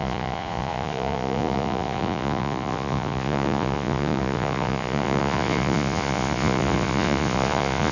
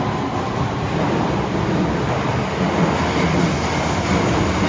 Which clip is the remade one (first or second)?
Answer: first